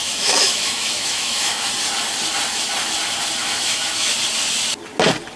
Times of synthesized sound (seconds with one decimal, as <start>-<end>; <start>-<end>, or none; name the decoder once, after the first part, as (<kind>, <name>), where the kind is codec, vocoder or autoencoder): 0.0-1.7 (autoencoder, DAC-VAE); 3.4-4.1